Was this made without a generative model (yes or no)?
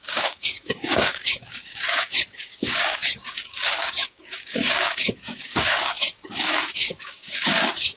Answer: no